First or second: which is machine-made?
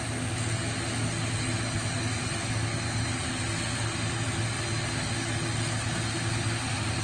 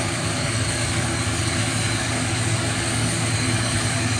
second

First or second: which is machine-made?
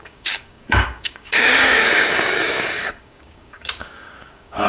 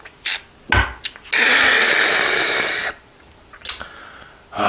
first